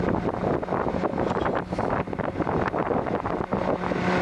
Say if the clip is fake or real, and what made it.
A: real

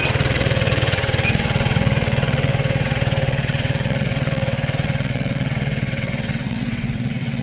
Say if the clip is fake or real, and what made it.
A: fake, vocoder, WaveNeXt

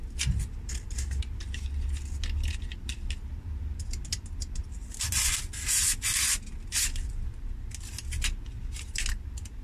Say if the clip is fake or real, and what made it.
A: real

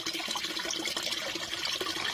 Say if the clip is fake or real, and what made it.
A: real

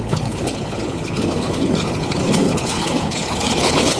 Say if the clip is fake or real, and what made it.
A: fake, codec, HILCodec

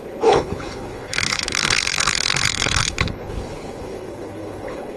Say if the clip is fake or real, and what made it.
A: fake, codec, HILCodec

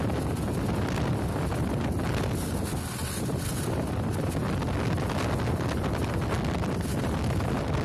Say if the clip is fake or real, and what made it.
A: real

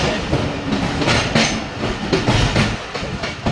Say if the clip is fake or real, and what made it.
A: real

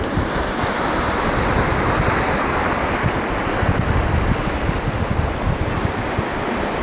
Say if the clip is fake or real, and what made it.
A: real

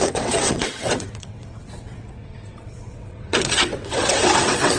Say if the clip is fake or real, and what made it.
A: fake, vocoder, WaveNeXt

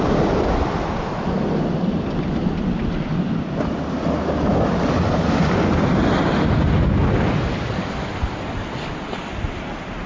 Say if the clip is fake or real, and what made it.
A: real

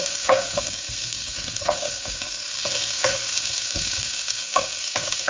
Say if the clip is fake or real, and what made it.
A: fake, codec, SNAC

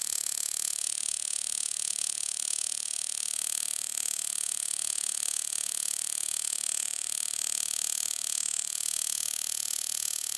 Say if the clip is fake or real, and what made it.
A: fake, vocoder, Vocos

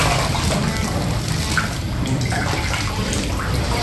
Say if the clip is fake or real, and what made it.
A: real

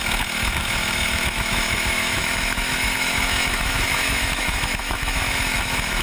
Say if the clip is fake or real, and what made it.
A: fake, autoencoder, DAC-VAE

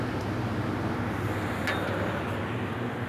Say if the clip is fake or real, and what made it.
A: real